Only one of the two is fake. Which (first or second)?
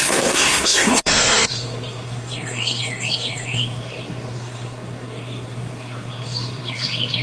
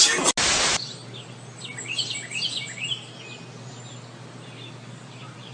first